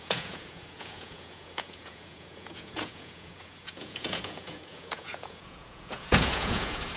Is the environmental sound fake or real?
fake